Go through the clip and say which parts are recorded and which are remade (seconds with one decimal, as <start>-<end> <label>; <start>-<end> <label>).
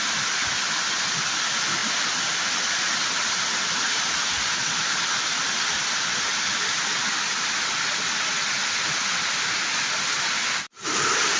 0.0-11.4 recorded